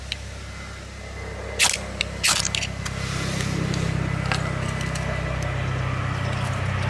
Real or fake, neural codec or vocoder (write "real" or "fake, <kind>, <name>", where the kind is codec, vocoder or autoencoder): real